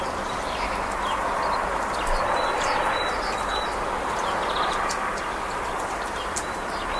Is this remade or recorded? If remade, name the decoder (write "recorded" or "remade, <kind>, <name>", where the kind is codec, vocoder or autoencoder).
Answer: remade, vocoder, BigVGAN v2